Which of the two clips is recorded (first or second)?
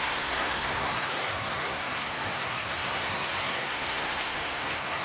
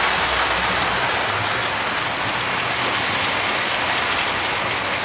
second